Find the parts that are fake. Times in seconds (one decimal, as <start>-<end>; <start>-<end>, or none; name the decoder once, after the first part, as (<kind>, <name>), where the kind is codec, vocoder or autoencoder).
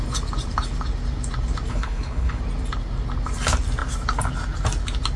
1.7-2.4 (codec, HILCodec)